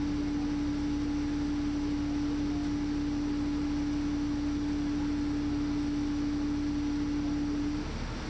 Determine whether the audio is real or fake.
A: real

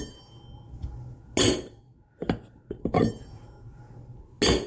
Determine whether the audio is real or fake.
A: real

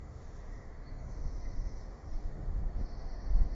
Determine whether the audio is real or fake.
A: fake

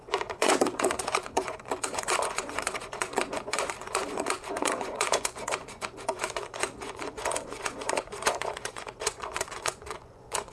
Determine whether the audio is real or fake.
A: fake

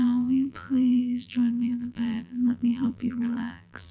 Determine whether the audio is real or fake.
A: fake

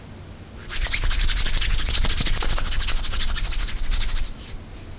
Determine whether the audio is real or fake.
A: real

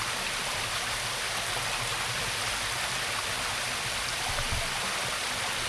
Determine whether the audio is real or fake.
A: fake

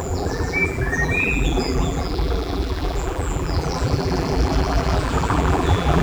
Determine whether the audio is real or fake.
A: fake